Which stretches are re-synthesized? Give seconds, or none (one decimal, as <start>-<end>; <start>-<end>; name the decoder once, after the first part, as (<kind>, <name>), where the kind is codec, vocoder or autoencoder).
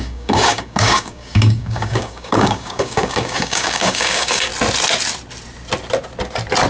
0.0-4.5 (codec, DAC)